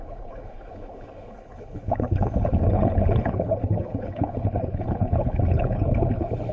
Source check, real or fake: fake